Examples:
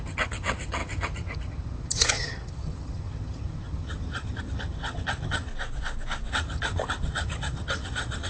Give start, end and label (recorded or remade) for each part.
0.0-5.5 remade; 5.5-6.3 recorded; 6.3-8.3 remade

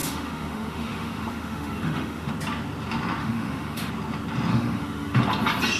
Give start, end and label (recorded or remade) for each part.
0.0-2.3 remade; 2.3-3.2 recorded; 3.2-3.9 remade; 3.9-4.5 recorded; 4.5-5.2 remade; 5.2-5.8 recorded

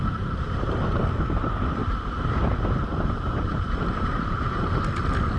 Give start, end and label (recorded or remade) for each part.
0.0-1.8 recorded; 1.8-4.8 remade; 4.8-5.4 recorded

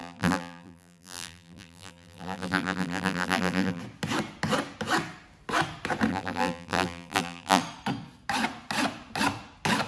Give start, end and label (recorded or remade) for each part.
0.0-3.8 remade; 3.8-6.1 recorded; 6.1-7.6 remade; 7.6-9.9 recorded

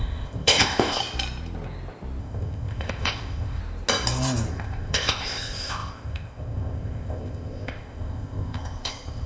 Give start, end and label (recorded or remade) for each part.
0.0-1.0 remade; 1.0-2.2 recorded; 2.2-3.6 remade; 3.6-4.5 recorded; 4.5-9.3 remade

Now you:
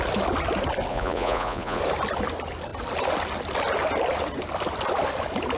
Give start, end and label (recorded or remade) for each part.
0.0-0.9 recorded; 0.9-1.8 remade; 1.8-5.6 recorded

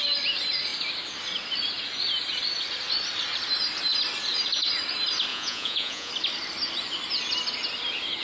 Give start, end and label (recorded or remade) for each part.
0.0-5.3 recorded; 5.3-6.1 remade; 6.1-8.2 recorded